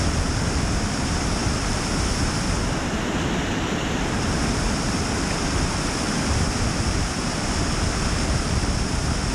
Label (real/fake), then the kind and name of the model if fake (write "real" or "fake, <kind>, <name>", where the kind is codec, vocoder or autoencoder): real